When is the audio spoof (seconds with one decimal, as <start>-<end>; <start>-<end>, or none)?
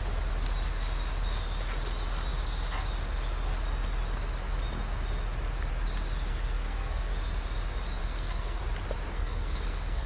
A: 6.3-7.1; 8.0-8.6; 9.1-10.1